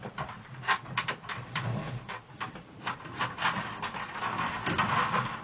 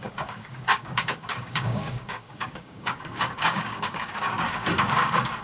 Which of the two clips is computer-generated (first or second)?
second